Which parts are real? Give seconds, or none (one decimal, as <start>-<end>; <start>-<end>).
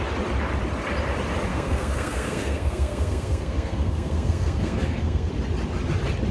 0.0-1.5; 5.3-6.3